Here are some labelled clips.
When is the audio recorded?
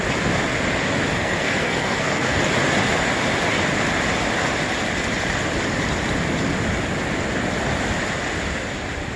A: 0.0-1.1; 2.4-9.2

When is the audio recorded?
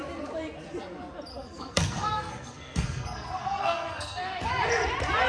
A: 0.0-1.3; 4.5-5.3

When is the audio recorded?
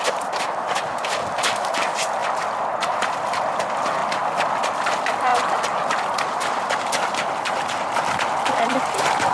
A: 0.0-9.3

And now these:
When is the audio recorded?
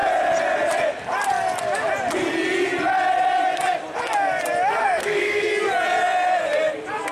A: 0.0-4.8; 5.5-7.1